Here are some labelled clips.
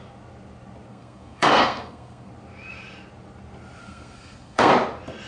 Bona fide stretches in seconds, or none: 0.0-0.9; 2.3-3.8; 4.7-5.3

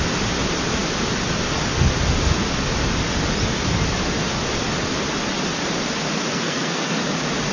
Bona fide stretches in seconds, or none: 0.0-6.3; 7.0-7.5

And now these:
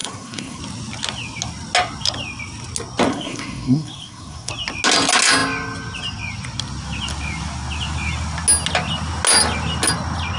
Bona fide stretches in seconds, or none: 0.6-3.1; 4.5-10.4

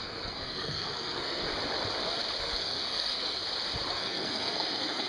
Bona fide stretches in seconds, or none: 1.5-2.4; 3.4-3.9

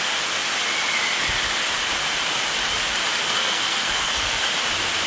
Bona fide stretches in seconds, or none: 0.0-3.2; 4.4-5.1